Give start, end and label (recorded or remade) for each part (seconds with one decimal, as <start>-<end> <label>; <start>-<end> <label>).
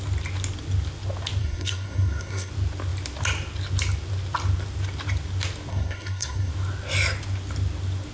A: 0.0-1.4 recorded; 1.4-2.5 remade; 2.5-5.7 recorded; 5.7-6.5 remade; 6.5-8.1 recorded